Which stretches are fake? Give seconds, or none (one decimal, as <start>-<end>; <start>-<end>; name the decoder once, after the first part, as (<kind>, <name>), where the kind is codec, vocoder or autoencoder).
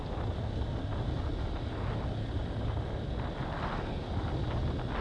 none